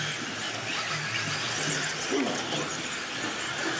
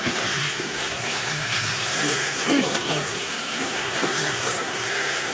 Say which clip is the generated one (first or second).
second